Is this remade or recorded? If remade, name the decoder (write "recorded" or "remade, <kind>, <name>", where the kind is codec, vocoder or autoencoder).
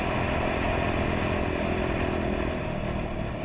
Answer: recorded